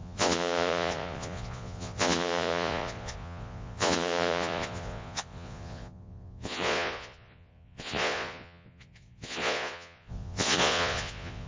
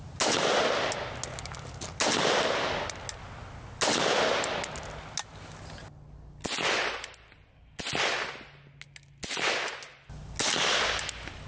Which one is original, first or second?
second